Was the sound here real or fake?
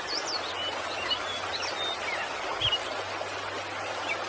real